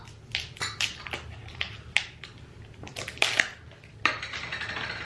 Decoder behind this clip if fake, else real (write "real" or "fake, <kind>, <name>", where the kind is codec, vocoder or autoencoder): real